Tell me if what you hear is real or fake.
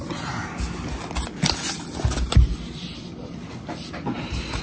real